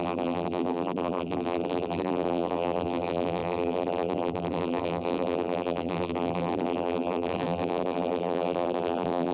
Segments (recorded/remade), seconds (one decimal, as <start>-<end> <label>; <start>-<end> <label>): 0.0-9.3 remade